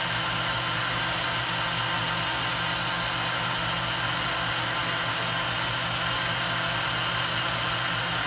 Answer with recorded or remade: recorded